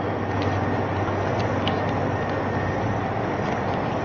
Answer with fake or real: real